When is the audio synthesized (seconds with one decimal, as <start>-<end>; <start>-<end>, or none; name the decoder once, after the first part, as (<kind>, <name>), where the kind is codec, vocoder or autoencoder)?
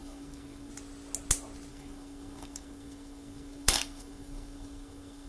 0.0-0.7 (codec, SNAC); 1.7-5.3